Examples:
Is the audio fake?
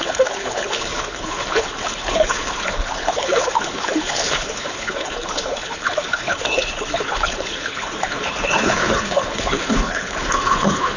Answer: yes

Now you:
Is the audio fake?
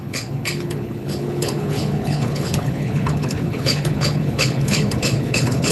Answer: yes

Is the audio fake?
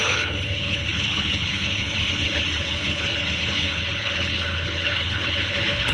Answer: yes